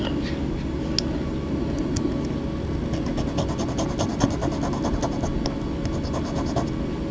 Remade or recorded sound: recorded